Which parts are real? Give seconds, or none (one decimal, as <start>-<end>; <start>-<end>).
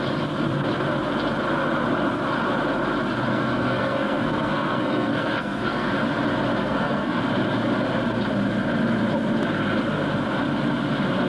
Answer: 0.0-3.3; 5.9-6.6; 7.2-11.3